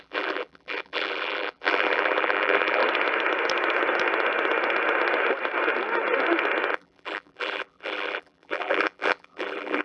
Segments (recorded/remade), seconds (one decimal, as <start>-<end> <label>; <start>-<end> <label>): 0.0-2.8 remade; 2.8-6.7 recorded; 6.7-9.8 remade